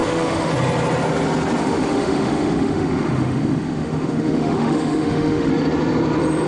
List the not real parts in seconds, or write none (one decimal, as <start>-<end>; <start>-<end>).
0.0-0.5; 1.6-5.5